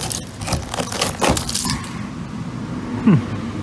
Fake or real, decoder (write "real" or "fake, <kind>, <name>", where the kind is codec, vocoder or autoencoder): real